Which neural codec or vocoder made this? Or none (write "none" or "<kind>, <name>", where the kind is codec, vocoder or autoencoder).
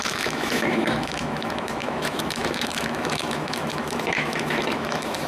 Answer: autoencoder, DAC-VAE